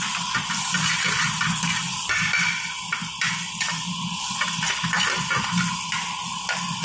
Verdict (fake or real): real